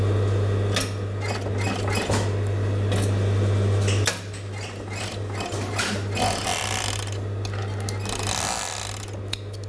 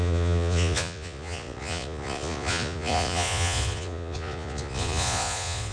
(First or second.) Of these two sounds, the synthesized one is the second